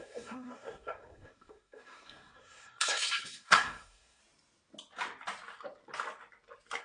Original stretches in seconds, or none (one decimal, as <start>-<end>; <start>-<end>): 4.2-6.8